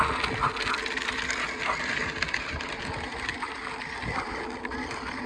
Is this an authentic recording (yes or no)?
yes